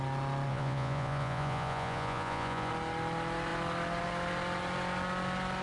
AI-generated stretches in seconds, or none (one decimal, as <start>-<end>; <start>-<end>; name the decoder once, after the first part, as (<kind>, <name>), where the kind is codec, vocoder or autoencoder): 0.5-2.7 (vocoder, Vocos)

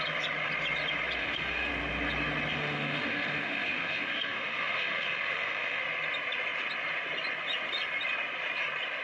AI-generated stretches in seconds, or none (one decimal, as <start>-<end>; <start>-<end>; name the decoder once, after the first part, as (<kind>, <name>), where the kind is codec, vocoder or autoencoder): 1.2-1.7 (autoencoder, DAC-VAE); 2.5-5.8

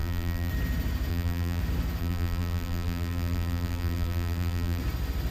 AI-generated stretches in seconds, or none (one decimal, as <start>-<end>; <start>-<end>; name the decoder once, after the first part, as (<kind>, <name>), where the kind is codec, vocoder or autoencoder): 0.0-0.5 (vocoder, BigVGAN v2); 1.1-1.6; 2.0-4.8

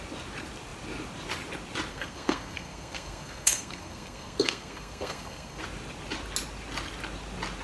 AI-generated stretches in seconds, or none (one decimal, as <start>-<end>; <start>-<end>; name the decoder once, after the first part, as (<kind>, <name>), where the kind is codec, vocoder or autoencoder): 1.9-5.6 (codec, SNAC)

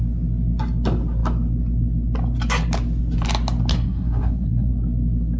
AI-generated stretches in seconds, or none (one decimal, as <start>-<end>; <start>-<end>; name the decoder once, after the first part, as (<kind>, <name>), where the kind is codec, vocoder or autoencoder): 3.7-4.8 (codec, SNAC)